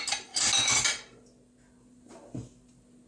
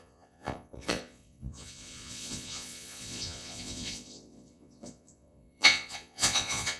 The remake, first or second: second